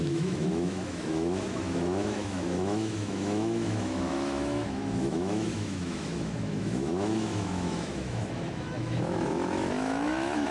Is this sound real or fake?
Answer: fake